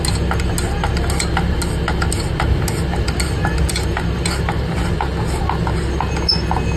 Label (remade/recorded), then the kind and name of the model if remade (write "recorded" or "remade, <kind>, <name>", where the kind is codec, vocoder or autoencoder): recorded